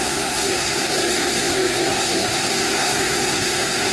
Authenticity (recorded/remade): remade